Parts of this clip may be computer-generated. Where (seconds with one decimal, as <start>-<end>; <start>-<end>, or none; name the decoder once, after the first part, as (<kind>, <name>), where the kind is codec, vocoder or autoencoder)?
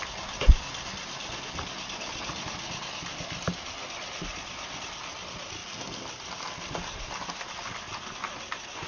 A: none